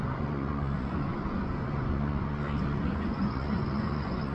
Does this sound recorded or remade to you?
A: remade